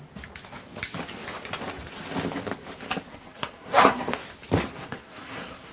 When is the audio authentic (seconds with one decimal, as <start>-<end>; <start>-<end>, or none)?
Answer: 0.0-3.1; 4.1-4.7

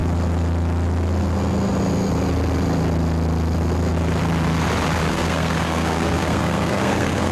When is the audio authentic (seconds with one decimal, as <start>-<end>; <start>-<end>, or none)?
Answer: 0.0-5.1

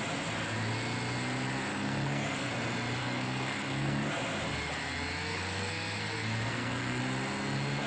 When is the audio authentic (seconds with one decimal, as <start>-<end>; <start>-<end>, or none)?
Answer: 0.0-1.7; 2.5-3.0; 4.1-5.3; 7.0-7.9

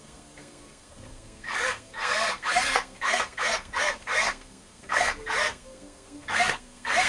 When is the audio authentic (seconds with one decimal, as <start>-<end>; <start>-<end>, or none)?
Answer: none

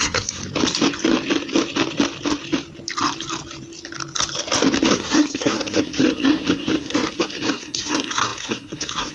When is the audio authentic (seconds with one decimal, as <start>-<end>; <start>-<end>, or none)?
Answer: 0.4-4.9